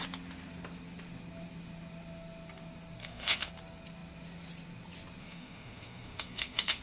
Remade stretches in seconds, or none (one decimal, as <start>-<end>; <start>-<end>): 3.0-3.5; 5.2-6.8

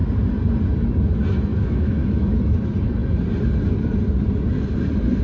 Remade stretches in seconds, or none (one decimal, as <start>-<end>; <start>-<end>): 1.5-2.4

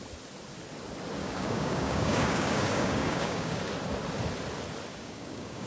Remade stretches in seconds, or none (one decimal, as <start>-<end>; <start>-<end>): 1.2-3.6; 4.9-5.7

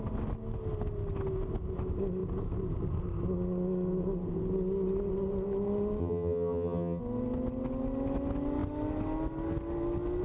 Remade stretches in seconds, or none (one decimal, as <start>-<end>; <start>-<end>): 6.0-7.0

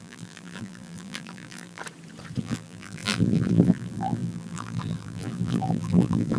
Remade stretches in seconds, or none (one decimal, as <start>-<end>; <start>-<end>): 0.0-1.8; 2.4-6.4

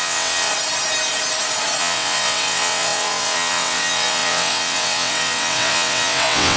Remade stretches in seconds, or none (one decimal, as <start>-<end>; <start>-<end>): 0.0-0.5; 1.8-6.6

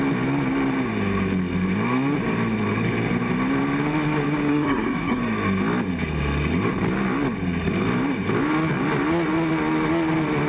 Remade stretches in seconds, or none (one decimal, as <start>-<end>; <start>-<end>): 4.5-5.2

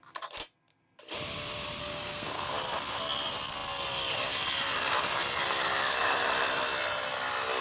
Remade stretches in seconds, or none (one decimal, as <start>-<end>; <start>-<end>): 1.8-2.5